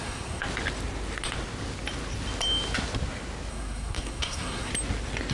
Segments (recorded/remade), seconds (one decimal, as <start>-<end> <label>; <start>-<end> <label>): 0.0-0.4 remade; 0.4-3.5 recorded; 3.5-4.7 remade; 4.7-5.3 recorded